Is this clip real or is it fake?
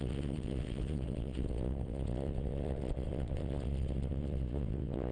fake